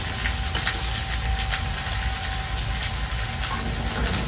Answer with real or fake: real